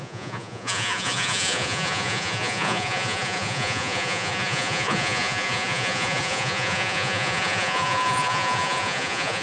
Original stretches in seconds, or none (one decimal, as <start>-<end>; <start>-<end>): none